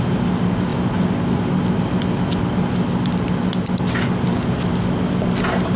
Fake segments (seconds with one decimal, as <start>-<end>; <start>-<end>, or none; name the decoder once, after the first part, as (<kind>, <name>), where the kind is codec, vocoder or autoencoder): none